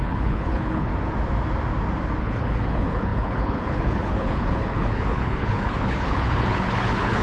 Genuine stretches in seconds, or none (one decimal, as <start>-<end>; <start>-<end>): 0.9-2.2